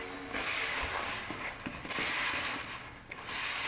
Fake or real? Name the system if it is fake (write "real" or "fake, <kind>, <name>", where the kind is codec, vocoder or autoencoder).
real